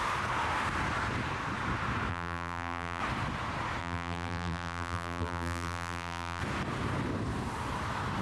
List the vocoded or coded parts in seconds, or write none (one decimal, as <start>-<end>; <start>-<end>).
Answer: 2.1-3.0; 3.8-6.4